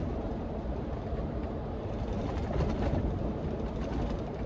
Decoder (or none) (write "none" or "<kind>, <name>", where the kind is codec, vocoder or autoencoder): none